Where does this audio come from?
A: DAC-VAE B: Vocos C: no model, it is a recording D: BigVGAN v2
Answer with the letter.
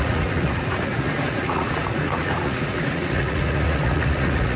B